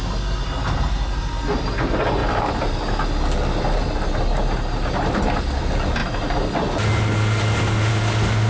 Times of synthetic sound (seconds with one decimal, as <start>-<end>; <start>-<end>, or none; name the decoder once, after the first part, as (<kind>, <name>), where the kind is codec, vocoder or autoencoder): none